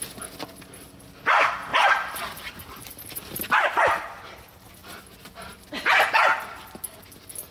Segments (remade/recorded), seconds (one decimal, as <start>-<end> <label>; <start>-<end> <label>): 0.0-1.7 recorded; 1.7-3.8 remade; 3.8-7.5 recorded